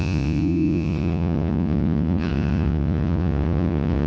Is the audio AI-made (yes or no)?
yes